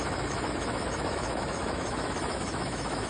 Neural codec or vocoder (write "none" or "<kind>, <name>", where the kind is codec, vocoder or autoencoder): autoencoder, DAC-VAE